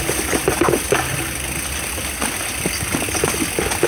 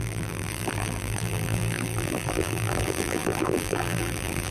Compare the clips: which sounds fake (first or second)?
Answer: second